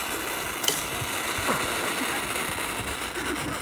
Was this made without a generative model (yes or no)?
yes